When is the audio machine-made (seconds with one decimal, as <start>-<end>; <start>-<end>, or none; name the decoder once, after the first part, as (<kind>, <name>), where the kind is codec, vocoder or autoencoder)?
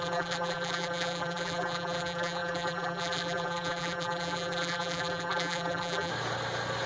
0.0-6.1 (vocoder, BigVGAN v2)